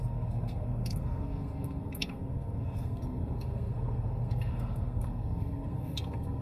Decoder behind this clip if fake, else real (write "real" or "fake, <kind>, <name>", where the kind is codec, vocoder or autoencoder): fake, codec, SNAC